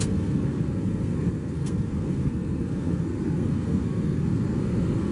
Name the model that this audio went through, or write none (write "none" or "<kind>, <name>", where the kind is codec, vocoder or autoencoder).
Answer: codec, SNAC